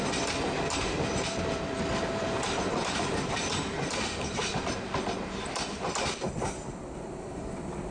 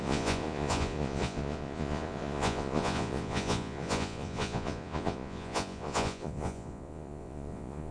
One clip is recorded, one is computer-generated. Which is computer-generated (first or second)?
second